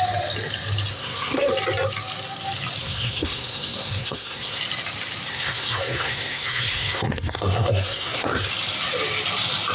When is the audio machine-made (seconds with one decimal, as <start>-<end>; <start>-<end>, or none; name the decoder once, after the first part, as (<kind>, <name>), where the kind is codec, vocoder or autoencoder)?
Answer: 0.9-1.5 (codec, SNAC); 2.8-4.6; 5.3-8.5